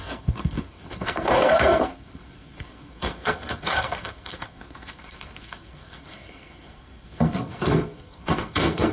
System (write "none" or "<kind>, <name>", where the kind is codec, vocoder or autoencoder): codec, SNAC